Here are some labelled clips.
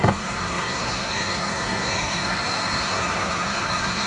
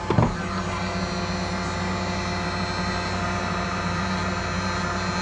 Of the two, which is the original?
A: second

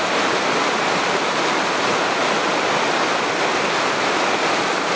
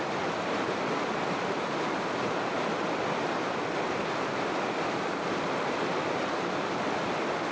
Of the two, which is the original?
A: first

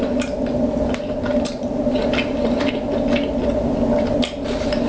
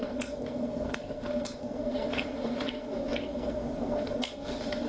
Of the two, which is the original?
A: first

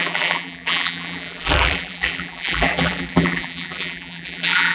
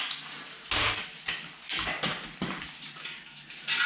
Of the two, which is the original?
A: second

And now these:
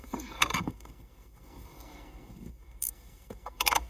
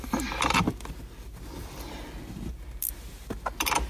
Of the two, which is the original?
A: second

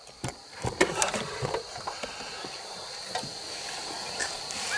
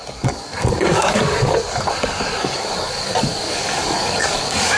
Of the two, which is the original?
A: first